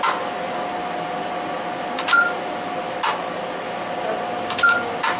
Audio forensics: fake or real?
real